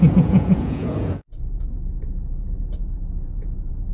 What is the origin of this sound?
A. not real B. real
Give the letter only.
A